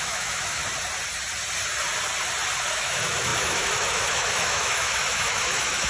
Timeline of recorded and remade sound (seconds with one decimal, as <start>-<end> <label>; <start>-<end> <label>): 0.0-0.6 remade; 0.6-2.7 recorded; 2.7-5.9 remade